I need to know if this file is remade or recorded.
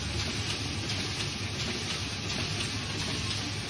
recorded